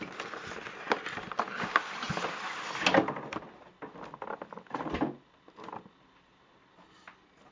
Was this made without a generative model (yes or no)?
yes